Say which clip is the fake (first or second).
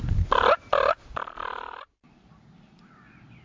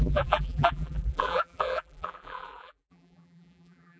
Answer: second